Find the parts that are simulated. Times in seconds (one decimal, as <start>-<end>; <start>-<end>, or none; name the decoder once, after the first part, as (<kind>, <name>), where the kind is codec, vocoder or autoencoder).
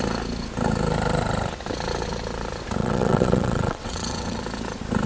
2.8-4.4 (vocoder, WaveNeXt)